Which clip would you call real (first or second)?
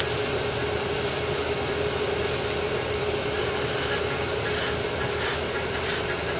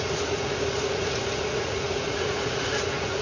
first